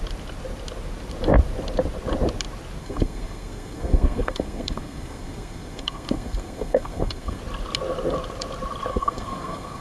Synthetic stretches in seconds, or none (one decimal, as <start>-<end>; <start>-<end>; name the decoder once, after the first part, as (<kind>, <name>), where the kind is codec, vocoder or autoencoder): 2.8-7.4 (codec, SNAC); 8.9-9.8